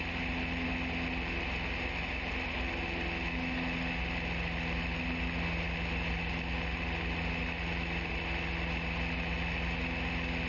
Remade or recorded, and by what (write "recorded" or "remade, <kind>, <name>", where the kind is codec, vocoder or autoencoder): recorded